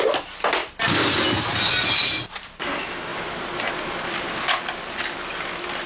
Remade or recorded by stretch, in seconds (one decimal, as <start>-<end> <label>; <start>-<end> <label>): 0.0-5.9 recorded

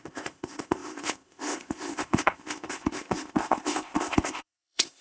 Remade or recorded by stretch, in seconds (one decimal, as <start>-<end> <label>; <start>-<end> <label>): 0.0-5.0 remade

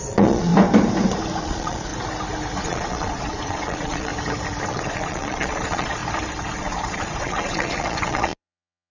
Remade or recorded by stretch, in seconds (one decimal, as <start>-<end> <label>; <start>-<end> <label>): 0.0-0.5 remade; 0.5-1.4 recorded; 1.4-1.9 remade; 1.9-2.6 recorded; 2.6-4.1 remade; 4.1-4.7 recorded; 4.7-6.0 remade; 6.0-6.6 recorded; 6.6-8.9 remade

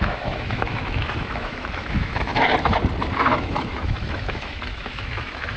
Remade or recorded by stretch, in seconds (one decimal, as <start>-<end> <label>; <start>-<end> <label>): 0.0-2.3 remade; 2.3-3.3 recorded; 3.3-5.6 remade

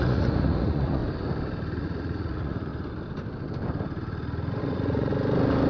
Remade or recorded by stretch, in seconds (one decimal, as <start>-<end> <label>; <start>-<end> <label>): 0.0-1.0 remade; 1.0-1.8 recorded; 1.8-2.7 remade; 2.7-4.6 recorded; 4.6-5.1 remade; 5.1-5.7 recorded

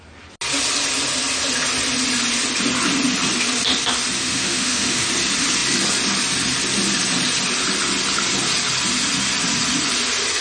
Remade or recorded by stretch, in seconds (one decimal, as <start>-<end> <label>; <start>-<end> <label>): 0.0-4.2 recorded; 4.2-5.1 remade; 5.1-10.4 recorded